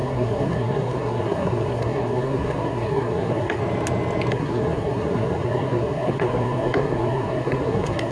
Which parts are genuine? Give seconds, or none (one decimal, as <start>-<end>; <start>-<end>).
3.6-4.3